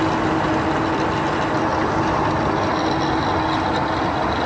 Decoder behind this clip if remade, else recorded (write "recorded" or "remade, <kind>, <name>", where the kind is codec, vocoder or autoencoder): recorded